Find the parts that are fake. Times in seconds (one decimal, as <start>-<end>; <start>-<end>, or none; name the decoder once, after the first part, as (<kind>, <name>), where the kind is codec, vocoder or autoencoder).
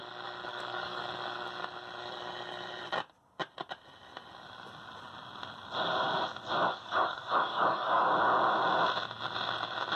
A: 0.5-1.0 (codec, DAC); 6.6-8.1